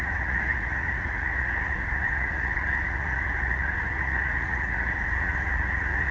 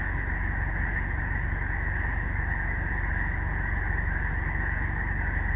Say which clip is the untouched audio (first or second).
second